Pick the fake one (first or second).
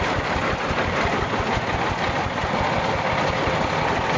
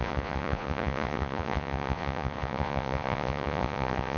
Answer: second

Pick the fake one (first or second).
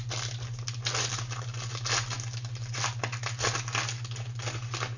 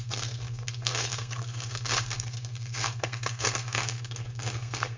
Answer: second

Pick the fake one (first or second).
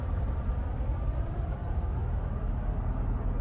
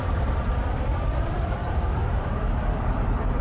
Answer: second